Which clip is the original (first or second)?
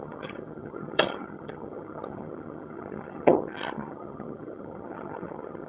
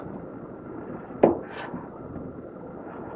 second